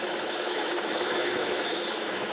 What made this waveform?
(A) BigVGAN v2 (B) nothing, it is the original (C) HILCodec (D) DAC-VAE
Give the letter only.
D